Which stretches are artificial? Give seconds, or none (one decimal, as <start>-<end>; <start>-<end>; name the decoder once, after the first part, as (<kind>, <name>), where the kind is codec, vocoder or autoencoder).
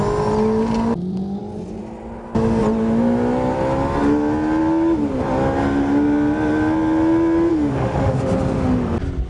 7.5-8.2 (autoencoder, DAC-VAE)